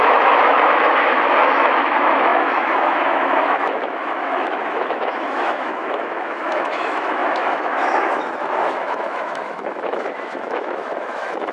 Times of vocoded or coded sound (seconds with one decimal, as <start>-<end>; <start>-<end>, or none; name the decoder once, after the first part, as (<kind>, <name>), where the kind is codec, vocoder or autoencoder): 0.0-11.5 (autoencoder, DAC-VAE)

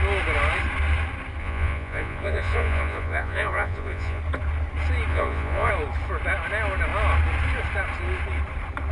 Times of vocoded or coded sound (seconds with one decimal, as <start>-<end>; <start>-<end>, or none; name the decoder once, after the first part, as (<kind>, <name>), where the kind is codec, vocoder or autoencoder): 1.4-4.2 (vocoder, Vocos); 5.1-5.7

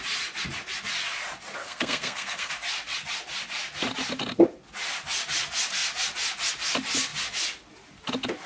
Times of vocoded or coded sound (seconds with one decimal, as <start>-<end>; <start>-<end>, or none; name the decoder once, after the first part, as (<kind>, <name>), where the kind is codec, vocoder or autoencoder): 1.6-2.5 (codec, SNAC)

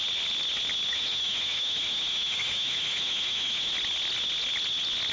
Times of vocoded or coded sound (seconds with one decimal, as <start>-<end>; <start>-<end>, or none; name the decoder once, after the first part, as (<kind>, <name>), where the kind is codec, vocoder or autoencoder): 0.9-3.7 (autoencoder, DAC-VAE)

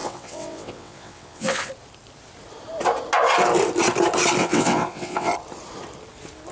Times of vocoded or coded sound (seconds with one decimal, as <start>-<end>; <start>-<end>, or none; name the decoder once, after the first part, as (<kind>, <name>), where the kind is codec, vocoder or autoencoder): 0.0-1.7 (vocoder, WaveNeXt); 4.4-5.3

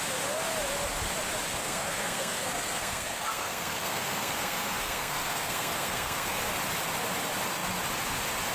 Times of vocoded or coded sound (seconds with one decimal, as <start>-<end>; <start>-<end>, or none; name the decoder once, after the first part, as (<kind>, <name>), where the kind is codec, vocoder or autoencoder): 1.5-6.4 (codec, SNAC)